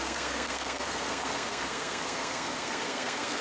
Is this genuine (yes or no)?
no